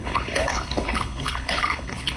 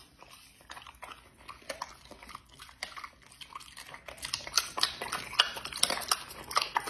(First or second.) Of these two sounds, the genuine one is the second